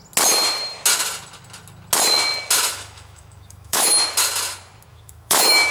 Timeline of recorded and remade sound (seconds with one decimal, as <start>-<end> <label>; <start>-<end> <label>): 0.0-2.7 recorded; 2.7-3.9 remade; 3.9-4.9 recorded; 4.9-5.7 remade